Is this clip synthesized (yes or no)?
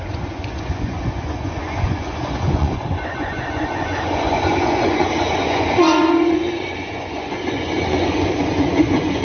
yes